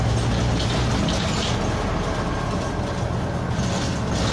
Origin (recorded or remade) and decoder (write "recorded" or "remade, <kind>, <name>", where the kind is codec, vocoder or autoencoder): recorded